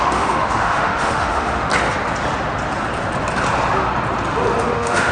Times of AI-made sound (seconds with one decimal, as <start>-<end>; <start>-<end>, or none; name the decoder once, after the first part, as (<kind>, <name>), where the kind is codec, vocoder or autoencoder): 0.0-1.7 (autoencoder, DAC-VAE); 4.6-5.1